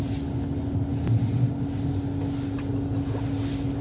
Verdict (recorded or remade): recorded